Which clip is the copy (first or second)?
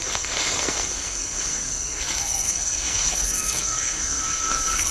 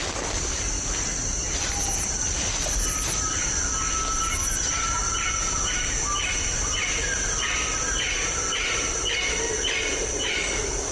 first